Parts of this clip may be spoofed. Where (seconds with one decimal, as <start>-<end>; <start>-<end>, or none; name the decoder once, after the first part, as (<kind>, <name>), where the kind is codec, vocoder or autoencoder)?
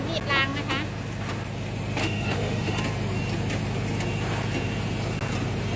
2.0-2.8 (autoencoder, DAC-VAE)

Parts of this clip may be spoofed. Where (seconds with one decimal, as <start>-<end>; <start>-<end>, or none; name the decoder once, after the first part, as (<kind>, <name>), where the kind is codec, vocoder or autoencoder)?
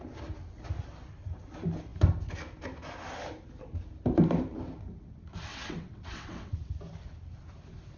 5.5-6.6 (vocoder, WaveNeXt)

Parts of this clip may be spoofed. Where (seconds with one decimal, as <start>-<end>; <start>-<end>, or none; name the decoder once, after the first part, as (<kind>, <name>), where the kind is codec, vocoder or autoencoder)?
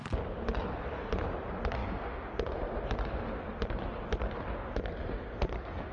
none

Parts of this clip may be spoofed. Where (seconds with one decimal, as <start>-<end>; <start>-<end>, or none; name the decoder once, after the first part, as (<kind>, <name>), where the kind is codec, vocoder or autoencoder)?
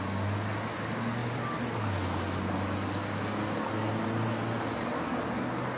none